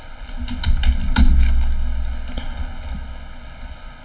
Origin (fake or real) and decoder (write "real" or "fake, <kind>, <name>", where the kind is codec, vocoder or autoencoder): real